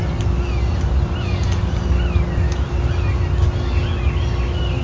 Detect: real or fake real